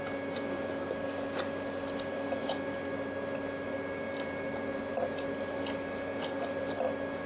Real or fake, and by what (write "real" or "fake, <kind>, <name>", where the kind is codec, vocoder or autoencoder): real